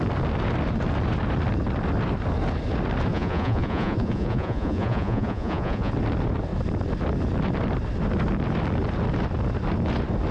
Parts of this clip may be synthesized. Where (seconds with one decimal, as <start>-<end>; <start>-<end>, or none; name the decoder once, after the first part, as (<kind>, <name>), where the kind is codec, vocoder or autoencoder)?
3.1-5.9 (vocoder, Vocos)